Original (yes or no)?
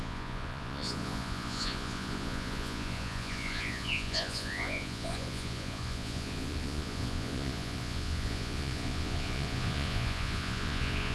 no